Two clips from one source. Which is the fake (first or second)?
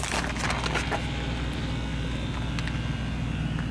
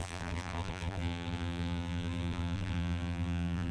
second